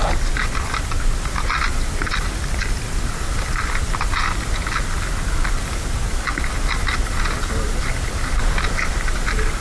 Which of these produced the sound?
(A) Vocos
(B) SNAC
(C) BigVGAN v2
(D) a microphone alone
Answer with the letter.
D